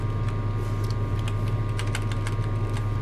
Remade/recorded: recorded